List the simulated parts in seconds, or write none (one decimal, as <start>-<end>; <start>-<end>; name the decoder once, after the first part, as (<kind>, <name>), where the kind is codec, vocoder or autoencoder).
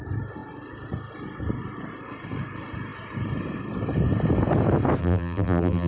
5.0-5.9 (vocoder, BigVGAN v2)